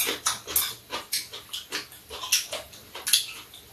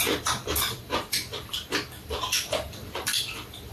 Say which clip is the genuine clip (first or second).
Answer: first